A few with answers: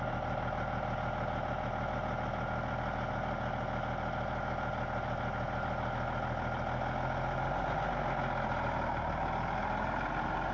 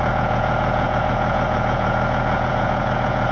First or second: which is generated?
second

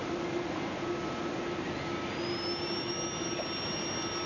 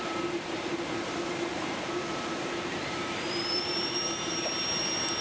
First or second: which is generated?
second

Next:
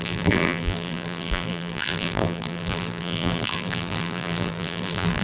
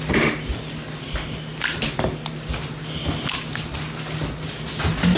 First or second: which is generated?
first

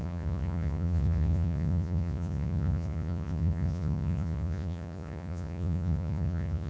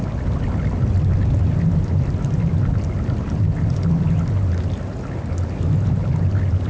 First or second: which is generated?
first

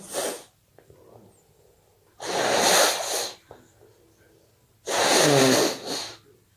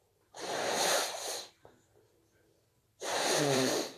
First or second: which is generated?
second